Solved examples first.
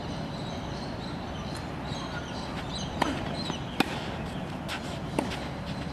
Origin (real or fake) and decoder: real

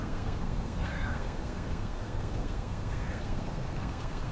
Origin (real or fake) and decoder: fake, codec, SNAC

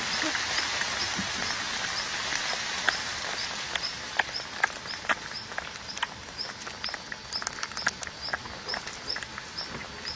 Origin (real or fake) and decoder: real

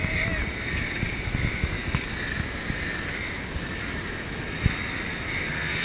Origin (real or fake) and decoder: real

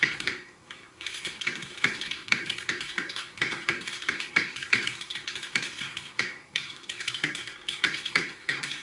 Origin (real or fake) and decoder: fake, codec, SNAC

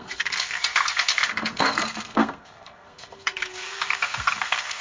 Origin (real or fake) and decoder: fake, codec, SNAC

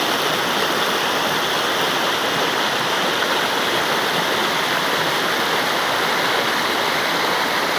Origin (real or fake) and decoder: real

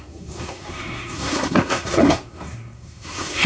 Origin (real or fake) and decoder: fake, codec, SNAC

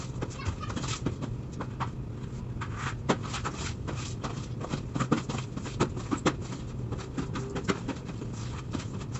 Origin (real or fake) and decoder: real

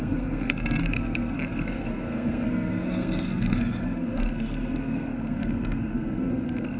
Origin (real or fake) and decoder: fake, codec, SNAC